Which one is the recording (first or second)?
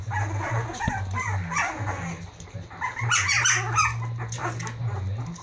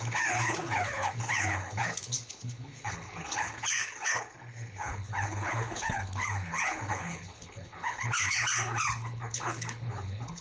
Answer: first